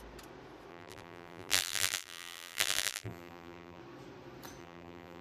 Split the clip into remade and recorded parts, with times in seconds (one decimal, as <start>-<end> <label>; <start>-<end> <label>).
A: 0.0-0.7 recorded; 0.7-3.8 remade; 3.8-4.6 recorded; 4.6-5.2 remade